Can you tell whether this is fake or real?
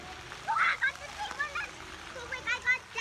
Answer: real